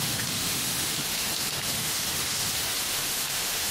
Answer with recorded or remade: remade